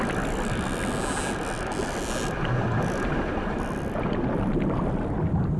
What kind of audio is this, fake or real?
real